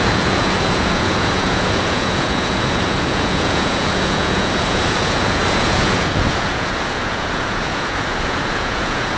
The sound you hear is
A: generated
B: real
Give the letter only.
A